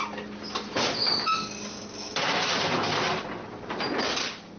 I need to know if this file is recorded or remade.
recorded